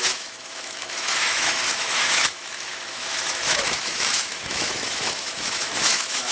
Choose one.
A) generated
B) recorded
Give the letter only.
A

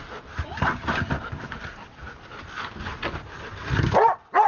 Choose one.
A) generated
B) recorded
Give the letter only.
B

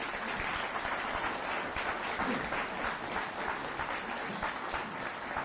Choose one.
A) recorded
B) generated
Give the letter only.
B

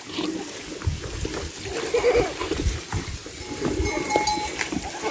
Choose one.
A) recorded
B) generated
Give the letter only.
A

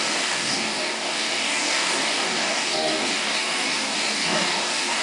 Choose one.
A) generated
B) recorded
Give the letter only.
A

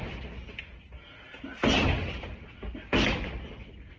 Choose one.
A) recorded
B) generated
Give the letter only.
A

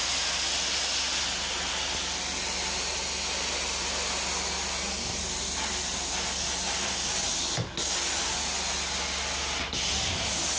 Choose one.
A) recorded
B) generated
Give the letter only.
A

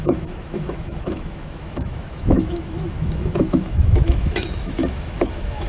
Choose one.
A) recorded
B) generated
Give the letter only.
B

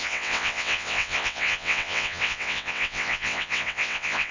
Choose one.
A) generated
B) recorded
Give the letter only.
A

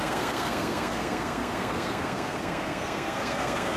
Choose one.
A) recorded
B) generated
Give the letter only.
B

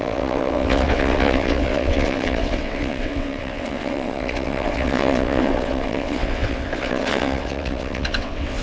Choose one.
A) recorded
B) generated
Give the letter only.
B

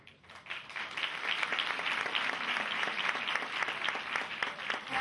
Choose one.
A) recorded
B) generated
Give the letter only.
A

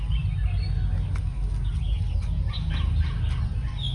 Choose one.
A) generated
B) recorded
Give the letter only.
B